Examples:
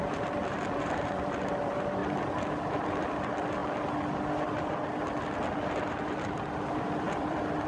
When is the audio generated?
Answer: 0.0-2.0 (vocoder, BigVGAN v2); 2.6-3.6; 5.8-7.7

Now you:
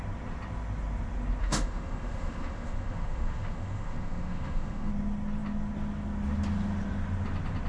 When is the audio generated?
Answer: 1.4-4.9 (autoencoder, DAC-VAE)

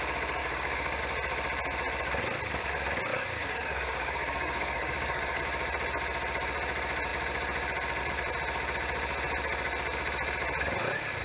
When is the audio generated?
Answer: 0.4-1.0 (codec, DAC); 3.1-5.4

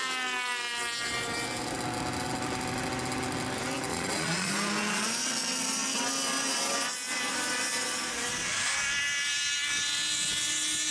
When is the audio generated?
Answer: 3.9-4.5 (vocoder, Vocos)

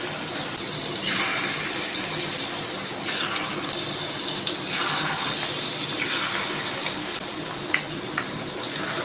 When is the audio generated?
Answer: none

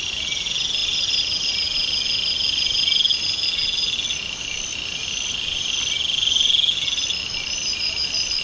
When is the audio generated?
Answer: none

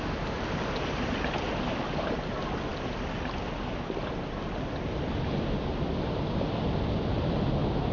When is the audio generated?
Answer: none

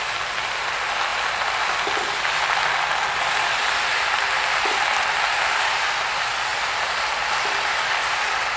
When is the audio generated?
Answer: none